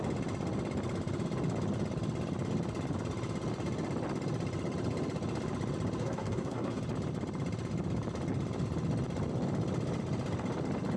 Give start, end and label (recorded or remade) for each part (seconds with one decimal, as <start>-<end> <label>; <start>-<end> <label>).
0.0-6.0 recorded; 6.0-6.8 remade; 6.8-11.0 recorded